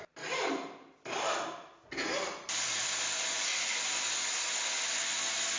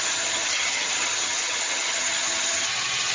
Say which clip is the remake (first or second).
second